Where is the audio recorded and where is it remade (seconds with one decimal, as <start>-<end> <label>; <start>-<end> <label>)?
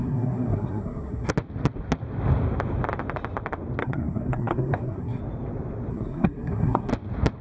0.0-1.3 remade; 1.3-3.8 recorded; 3.8-5.2 remade; 5.2-5.9 recorded; 5.9-6.9 remade; 6.9-7.4 recorded